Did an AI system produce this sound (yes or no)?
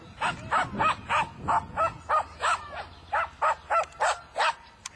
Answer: no